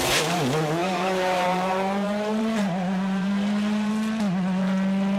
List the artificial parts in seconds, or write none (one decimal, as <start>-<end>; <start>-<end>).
0.8-3.9